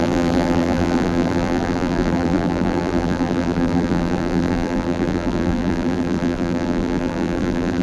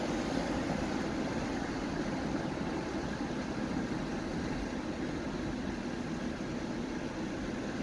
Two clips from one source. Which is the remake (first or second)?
first